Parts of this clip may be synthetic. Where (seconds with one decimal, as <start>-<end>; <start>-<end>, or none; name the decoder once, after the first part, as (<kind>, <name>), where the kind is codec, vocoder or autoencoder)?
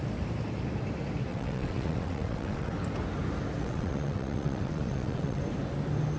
1.3-2.7 (vocoder, WaveNeXt); 3.6-5.4